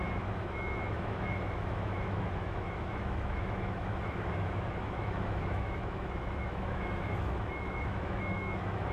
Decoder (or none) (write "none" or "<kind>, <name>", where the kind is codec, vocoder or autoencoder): autoencoder, DAC-VAE